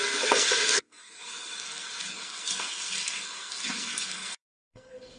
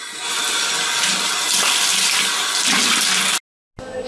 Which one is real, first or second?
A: second